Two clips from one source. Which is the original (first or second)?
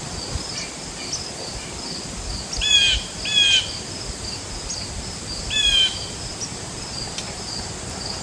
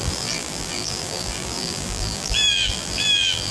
first